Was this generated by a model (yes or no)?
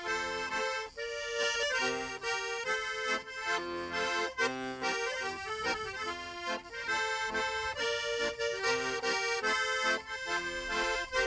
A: no